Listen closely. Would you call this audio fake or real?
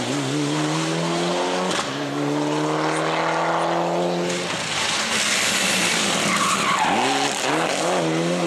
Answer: real